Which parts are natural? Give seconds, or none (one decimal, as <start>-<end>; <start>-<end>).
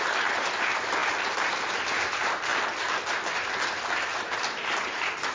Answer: 0.0-5.3